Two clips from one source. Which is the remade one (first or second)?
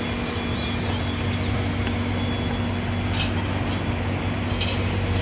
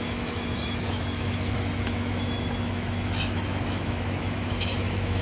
second